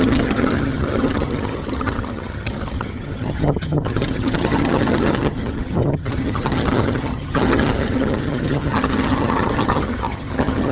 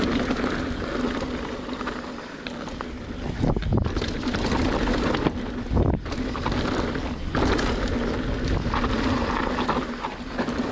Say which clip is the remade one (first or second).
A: first